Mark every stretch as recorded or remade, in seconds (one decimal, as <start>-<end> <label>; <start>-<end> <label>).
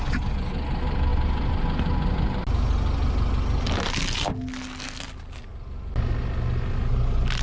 0.0-7.4 recorded